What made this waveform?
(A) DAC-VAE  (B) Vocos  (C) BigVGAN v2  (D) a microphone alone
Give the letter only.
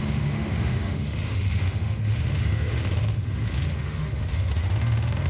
A